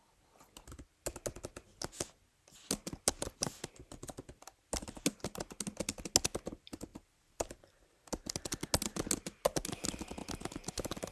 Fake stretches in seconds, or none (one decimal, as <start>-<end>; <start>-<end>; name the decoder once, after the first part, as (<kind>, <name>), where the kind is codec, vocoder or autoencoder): 6.9-8.1 (vocoder, BigVGAN v2)